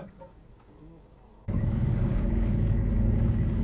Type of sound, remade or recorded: remade